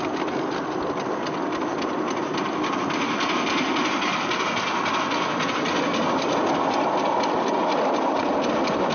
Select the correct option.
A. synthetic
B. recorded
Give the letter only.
B